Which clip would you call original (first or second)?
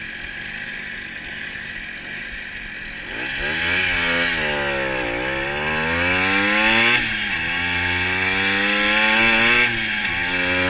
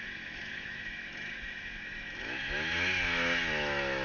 first